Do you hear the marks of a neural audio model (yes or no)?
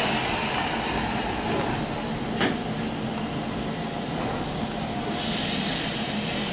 no